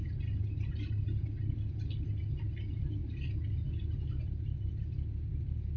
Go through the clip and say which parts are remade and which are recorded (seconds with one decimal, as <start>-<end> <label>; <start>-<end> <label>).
0.0-5.8 recorded